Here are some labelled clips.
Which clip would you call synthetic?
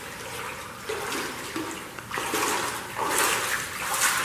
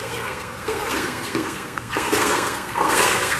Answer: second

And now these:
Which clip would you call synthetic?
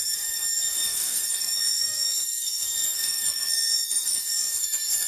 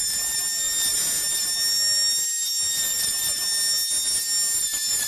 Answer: first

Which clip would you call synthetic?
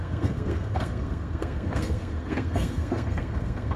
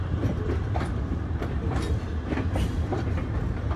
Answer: first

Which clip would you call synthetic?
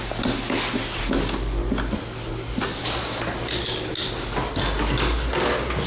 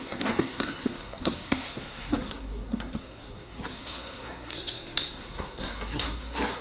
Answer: second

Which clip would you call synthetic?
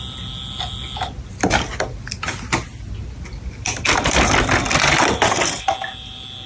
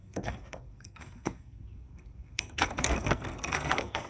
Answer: second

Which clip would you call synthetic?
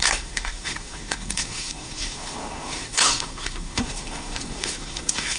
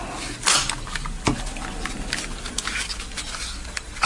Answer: first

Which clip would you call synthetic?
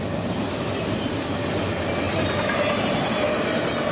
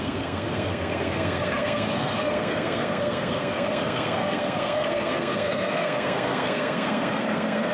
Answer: second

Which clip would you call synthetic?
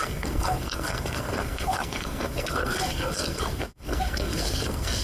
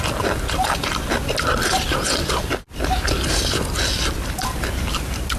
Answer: first